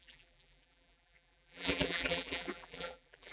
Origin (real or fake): fake